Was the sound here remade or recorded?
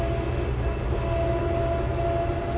recorded